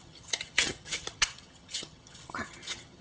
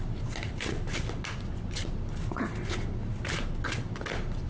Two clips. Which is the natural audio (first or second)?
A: second